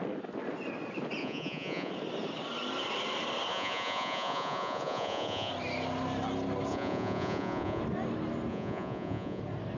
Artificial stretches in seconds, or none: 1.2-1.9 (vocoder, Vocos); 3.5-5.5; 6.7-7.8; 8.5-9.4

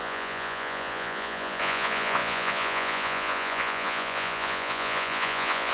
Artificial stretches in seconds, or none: 0.0-5.7 (vocoder, Vocos)

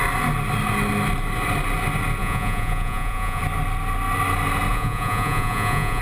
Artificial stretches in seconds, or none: 2.2-3.4 (vocoder, Vocos); 4.7-6.0

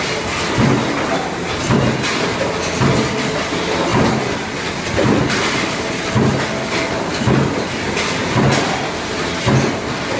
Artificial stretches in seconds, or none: none

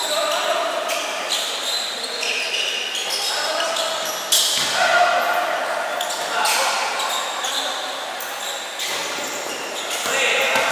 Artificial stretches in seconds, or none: none